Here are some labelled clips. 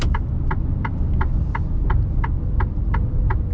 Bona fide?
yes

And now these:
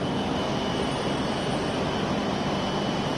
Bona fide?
yes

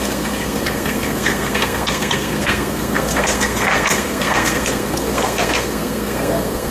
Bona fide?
no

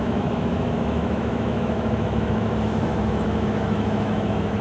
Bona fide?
no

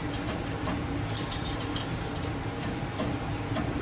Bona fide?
no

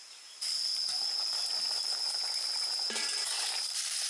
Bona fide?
yes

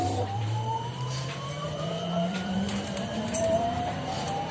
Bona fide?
no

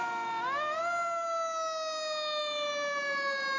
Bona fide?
yes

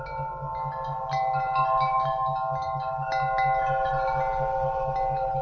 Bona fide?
yes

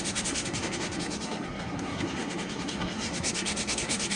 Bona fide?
no